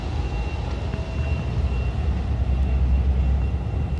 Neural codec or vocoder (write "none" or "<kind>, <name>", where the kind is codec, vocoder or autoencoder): none